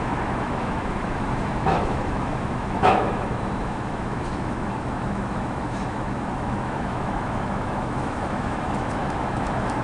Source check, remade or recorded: remade